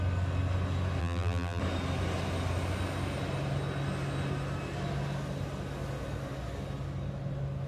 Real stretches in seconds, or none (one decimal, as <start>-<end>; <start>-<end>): 0.0-1.0; 1.6-7.7